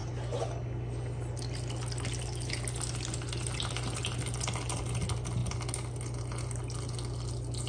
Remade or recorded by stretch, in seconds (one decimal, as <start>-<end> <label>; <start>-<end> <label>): 0.0-7.7 recorded